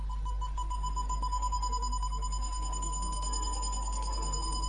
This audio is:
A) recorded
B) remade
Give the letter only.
B